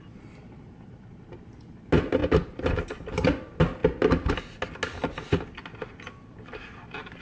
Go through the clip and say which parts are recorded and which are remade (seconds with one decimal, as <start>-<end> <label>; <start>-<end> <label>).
0.0-7.2 recorded